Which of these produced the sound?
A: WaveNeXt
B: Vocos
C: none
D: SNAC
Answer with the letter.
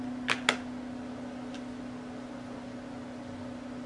C